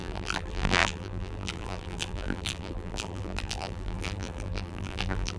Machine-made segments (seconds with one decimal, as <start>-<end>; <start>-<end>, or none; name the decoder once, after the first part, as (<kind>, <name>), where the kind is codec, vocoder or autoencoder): 0.0-5.4 (vocoder, BigVGAN v2)